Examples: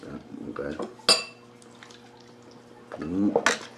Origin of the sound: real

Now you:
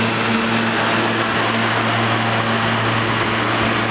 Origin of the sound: real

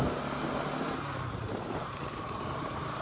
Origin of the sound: fake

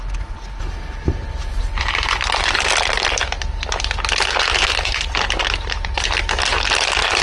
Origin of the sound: real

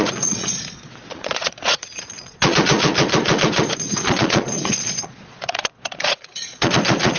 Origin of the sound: fake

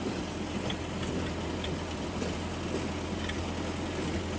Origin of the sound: real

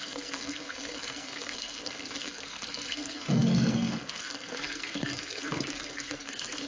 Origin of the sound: fake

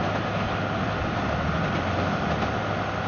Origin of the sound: real